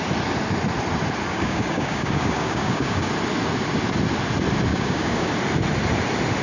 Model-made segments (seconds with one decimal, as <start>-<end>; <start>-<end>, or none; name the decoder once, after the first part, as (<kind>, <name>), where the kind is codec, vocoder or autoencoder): 1.3-3.1 (codec, DAC); 4.7-5.3